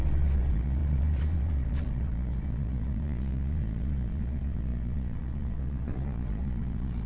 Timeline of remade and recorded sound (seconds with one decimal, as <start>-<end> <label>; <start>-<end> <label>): 0.0-7.1 remade